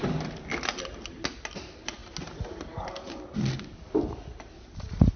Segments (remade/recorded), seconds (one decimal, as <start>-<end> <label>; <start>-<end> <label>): 0.0-5.2 recorded